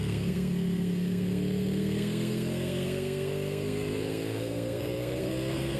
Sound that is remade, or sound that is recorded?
remade